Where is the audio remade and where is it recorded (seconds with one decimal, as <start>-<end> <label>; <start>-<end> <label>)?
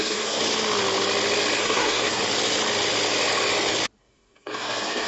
0.0-0.4 remade; 0.4-1.6 recorded; 1.6-2.2 remade; 2.2-4.0 recorded; 4.0-5.1 remade